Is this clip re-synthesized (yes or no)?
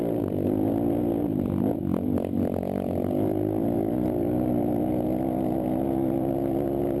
no